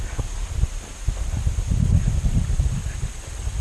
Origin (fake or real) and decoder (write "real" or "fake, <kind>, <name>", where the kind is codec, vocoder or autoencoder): real